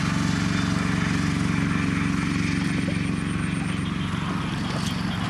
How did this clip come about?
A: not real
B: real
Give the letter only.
B